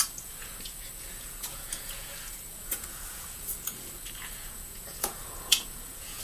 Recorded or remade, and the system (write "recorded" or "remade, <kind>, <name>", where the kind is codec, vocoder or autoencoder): remade, vocoder, Vocos